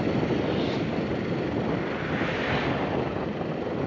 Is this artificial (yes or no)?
no